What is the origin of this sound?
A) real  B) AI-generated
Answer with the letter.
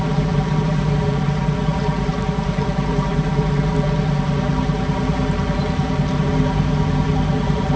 B